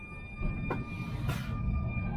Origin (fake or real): real